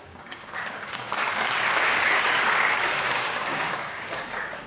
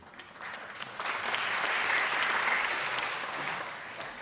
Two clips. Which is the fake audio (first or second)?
first